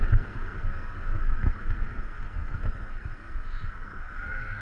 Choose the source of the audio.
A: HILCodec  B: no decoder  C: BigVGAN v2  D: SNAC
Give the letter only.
D